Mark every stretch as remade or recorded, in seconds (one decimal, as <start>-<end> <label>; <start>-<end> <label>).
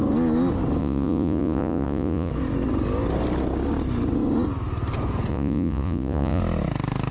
0.0-0.8 recorded; 0.8-2.3 remade; 2.3-5.3 recorded; 5.3-6.4 remade; 6.4-7.1 recorded